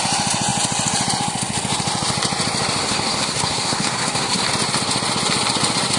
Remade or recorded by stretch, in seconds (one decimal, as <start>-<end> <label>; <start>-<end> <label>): 0.0-2.8 recorded; 2.8-4.5 remade; 4.5-6.0 recorded